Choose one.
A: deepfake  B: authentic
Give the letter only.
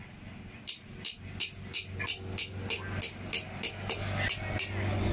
B